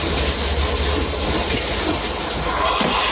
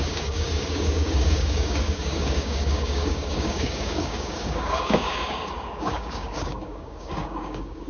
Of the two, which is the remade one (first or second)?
second